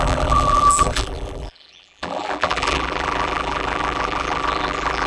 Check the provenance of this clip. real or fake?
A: fake